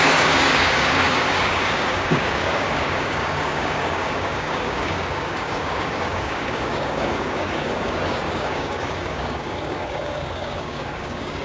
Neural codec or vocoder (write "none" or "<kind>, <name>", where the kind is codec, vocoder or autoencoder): codec, DAC